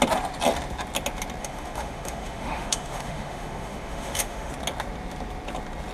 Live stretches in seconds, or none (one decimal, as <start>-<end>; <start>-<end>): 0.0-1.4; 4.5-5.9